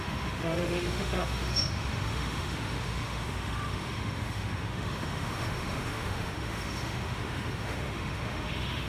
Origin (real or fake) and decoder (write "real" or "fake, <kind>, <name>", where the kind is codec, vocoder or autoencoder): fake, autoencoder, DAC-VAE